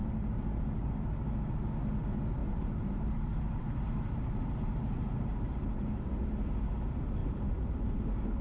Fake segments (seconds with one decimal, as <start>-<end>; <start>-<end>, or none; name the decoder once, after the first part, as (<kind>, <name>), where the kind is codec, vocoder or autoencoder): 0.0-0.9 (vocoder, BigVGAN v2); 2.4-6.1; 7.2-8.4